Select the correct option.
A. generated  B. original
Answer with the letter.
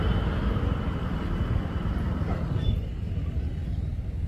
B